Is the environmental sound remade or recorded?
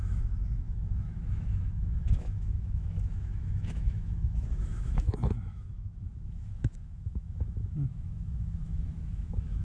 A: remade